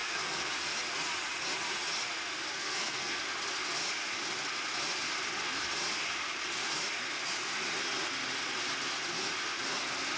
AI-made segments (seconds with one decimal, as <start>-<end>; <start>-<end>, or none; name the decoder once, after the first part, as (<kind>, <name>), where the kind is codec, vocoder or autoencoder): 0.0-0.5 (codec, SNAC); 2.5-3.2